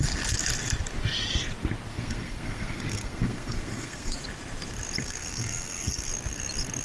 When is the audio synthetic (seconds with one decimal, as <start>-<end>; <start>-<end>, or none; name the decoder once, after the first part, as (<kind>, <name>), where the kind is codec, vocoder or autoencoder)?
1.9-4.2 (codec, SNAC); 5.0-6.1